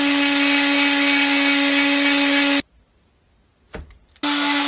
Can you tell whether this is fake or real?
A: real